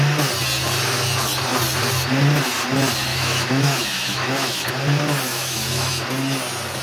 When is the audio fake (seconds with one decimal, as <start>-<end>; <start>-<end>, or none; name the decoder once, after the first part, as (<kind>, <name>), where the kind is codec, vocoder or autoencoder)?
3.1-4.7 (autoencoder, DAC-VAE); 5.3-5.9